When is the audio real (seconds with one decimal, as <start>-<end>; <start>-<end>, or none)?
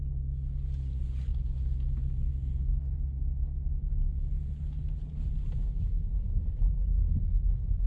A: 0.0-7.9